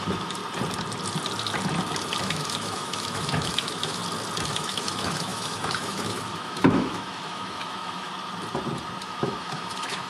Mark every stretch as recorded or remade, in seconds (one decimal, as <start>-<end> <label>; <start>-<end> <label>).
0.0-0.4 remade; 0.4-2.2 recorded; 2.2-4.0 remade; 4.0-4.5 recorded; 4.5-8.1 remade; 8.1-9.0 recorded; 9.0-10.1 remade